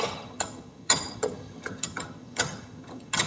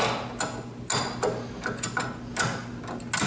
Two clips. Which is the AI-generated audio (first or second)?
first